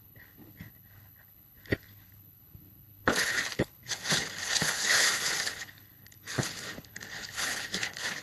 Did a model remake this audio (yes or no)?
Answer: yes